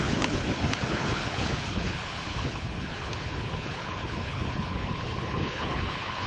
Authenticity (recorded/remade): remade